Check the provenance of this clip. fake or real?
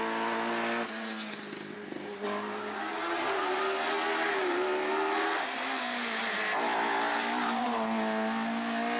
real